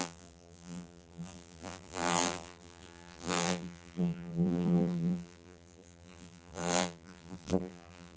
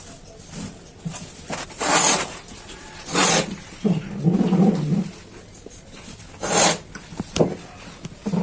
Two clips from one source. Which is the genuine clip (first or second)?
second